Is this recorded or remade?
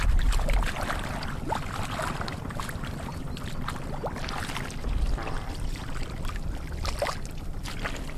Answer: recorded